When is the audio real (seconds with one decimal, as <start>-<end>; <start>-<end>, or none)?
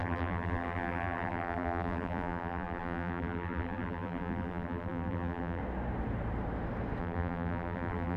5.6-7.0